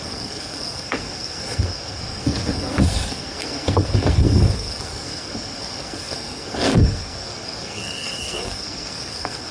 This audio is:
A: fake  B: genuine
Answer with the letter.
A